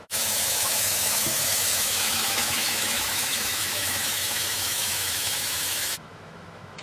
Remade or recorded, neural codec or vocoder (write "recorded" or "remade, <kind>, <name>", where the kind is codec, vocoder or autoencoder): remade, autoencoder, DAC-VAE